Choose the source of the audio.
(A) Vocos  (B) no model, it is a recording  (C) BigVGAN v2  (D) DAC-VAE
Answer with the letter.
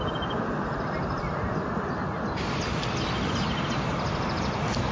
B